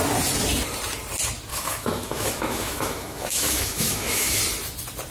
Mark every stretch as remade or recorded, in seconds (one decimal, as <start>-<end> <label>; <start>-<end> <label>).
0.0-1.5 recorded; 1.5-4.4 remade; 4.4-5.1 recorded